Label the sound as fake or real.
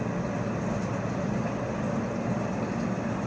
real